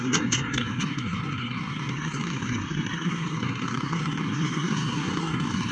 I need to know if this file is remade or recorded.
remade